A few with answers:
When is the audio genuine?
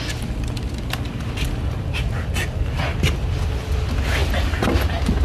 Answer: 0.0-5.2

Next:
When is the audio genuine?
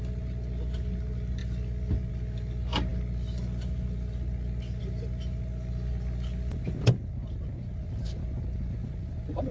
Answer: 0.0-9.5